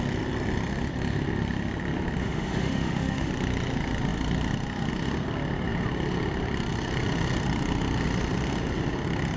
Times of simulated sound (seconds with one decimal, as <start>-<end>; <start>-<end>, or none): 2.2-3.3

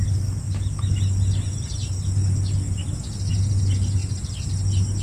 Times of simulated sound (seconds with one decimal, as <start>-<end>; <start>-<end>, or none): none

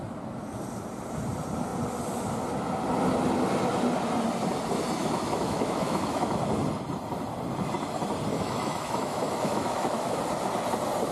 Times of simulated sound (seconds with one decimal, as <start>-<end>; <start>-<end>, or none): 5.0-6.4; 8.3-10.2

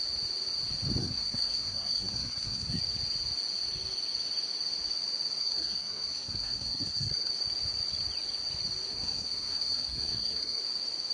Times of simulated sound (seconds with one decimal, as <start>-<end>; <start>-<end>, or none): 1.0-2.8; 5.4-7.3; 8.9-10.6

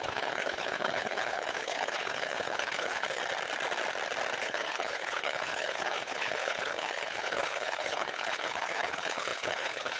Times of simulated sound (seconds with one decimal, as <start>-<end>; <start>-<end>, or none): 0.0-3.2; 4.4-10.0